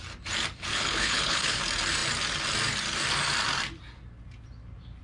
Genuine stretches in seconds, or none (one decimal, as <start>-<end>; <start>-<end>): 0.0-0.7; 1.6-5.0